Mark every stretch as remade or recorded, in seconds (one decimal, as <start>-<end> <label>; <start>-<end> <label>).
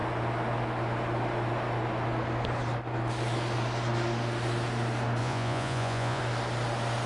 0.0-5.2 recorded; 5.2-6.2 remade; 6.2-7.1 recorded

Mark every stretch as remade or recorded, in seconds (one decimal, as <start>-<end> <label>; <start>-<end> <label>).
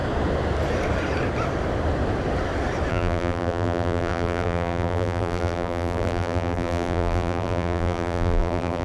0.0-2.9 recorded; 2.9-8.8 remade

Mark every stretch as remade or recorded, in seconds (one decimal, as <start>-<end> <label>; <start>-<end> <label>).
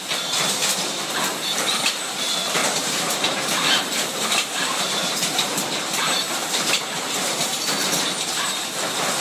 0.0-2.6 recorded; 2.6-5.8 remade; 5.8-6.4 recorded; 6.4-8.2 remade; 8.2-9.2 recorded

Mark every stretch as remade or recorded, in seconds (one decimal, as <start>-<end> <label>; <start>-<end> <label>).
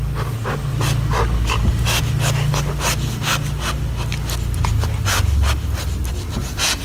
0.0-6.8 recorded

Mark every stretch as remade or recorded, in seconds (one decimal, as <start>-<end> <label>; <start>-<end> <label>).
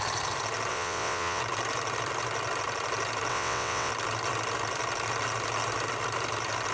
0.0-0.7 recorded; 0.7-1.4 remade; 1.4-3.3 recorded; 3.3-3.9 remade; 3.9-6.7 recorded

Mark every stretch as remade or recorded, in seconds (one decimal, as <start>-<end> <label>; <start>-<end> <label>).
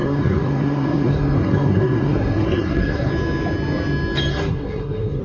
0.0-3.1 remade; 3.1-4.3 recorded; 4.3-5.2 remade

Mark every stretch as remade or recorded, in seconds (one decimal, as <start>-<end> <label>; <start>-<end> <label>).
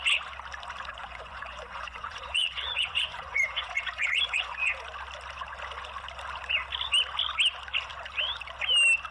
0.0-0.9 recorded; 0.9-4.7 remade; 4.7-9.1 recorded